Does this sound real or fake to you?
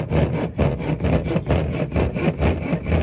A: real